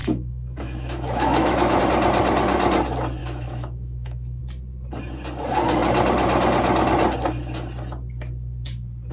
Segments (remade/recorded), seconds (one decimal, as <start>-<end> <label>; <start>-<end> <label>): 0.0-1.8 remade; 1.8-3.2 recorded; 3.2-4.4 remade; 4.4-9.1 recorded